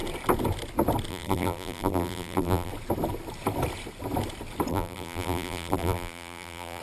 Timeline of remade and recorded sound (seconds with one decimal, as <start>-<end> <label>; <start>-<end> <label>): 0.0-1.1 recorded; 1.1-2.7 remade; 2.7-4.7 recorded; 4.7-6.8 remade